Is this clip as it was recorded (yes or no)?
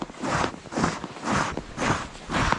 yes